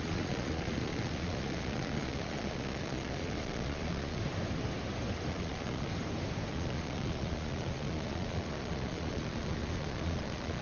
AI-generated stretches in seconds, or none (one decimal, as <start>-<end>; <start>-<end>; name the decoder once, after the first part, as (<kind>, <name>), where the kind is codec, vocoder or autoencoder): 0.0-4.2 (vocoder, Vocos); 5.3-5.9; 6.5-10.6